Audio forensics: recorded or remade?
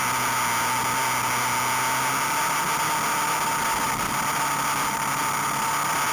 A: recorded